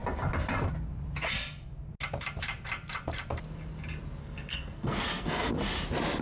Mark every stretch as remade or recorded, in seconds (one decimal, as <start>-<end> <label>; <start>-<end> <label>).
0.0-4.2 recorded; 4.2-5.5 remade; 5.5-6.2 recorded